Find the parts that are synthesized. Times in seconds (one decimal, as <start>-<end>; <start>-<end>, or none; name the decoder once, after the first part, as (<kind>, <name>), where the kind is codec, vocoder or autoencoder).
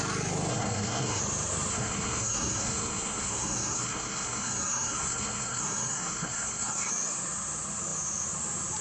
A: 0.5-1.2 (codec, SNAC); 1.7-6.9